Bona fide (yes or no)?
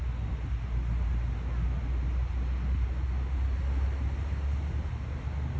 yes